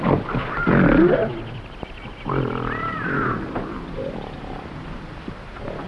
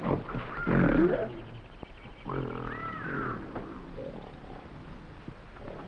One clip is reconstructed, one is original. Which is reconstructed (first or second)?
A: first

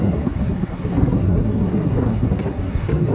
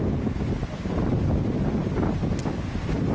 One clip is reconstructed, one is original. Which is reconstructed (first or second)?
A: first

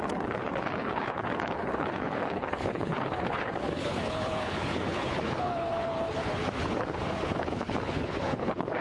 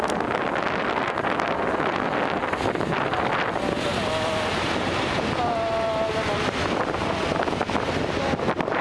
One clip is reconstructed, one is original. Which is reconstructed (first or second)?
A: first